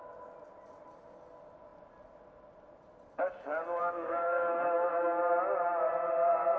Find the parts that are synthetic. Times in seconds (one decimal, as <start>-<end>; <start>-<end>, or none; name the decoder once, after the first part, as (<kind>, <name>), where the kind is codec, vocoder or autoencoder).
3.8-4.9 (codec, SNAC)